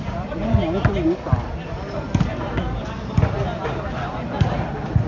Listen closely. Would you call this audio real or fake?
real